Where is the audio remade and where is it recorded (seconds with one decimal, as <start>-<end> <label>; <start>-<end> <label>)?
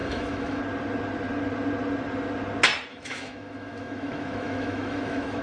0.0-0.6 remade; 0.6-2.9 recorded; 2.9-5.4 remade